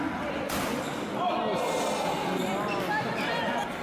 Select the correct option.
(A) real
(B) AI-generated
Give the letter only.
A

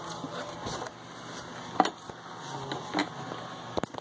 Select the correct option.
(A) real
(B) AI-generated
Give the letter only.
A